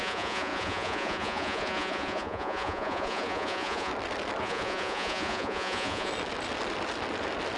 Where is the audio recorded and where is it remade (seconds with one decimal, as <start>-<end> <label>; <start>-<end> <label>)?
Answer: 0.0-3.9 remade; 3.9-4.4 recorded; 4.4-6.1 remade; 6.1-7.6 recorded